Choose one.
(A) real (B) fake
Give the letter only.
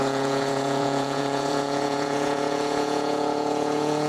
B